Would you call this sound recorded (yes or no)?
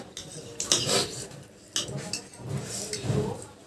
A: yes